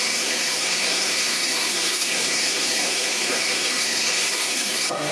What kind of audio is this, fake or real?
fake